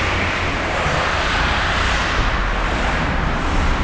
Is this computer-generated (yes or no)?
no